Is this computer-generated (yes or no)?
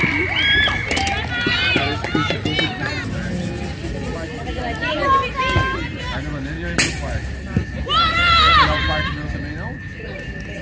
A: no